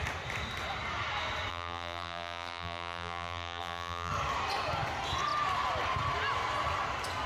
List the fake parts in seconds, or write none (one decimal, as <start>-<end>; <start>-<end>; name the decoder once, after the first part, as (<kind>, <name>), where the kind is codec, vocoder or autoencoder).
1.5-4.1 (vocoder, BigVGAN v2)